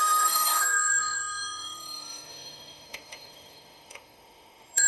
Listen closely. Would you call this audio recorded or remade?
remade